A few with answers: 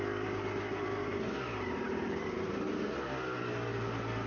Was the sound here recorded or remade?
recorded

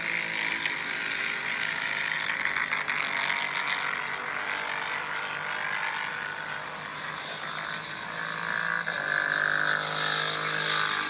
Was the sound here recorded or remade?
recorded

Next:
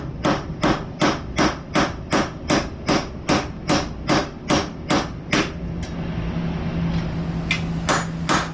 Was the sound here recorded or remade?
recorded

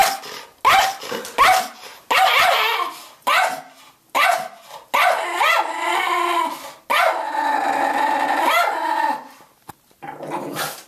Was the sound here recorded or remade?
recorded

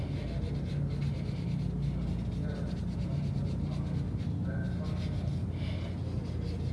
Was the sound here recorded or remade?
recorded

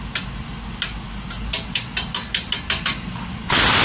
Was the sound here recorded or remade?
recorded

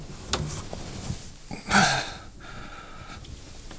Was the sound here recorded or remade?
recorded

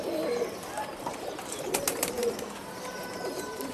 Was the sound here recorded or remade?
remade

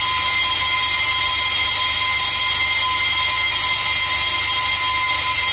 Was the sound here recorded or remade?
recorded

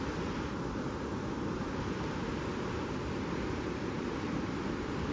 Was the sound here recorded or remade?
recorded